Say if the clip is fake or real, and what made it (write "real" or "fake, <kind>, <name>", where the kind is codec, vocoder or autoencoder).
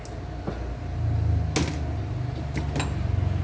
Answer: real